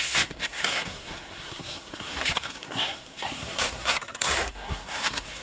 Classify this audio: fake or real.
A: fake